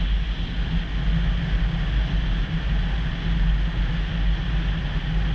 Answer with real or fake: real